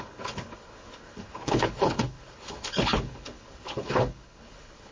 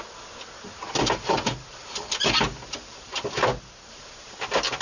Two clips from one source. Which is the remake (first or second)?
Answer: first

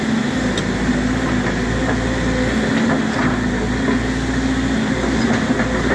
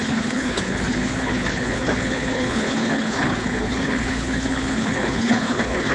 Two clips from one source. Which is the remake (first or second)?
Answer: second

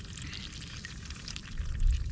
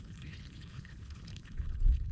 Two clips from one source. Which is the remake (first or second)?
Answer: second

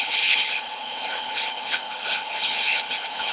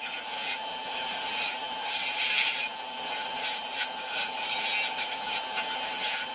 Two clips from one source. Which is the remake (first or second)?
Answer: first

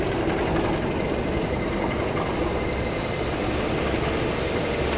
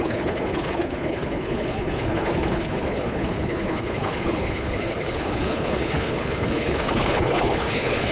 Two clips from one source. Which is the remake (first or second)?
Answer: second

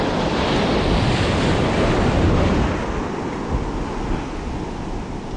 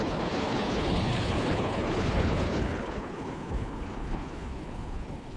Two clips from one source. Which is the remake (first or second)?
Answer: second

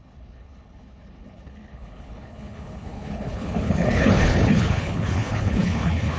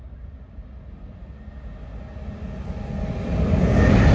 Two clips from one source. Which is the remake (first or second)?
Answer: first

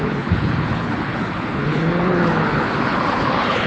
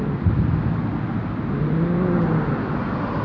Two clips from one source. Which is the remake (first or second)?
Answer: first